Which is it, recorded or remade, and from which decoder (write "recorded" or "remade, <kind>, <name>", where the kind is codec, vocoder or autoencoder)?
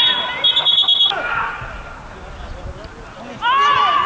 recorded